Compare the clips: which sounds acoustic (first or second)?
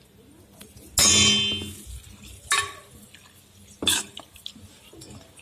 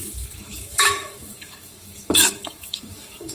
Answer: first